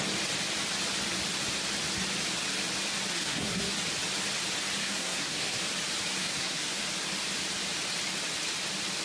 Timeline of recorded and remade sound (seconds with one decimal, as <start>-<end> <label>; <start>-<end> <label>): 0.0-3.1 recorded; 3.1-3.7 remade; 3.7-4.8 recorded; 4.8-5.6 remade; 5.6-6.2 recorded; 6.2-6.8 remade; 6.8-9.0 recorded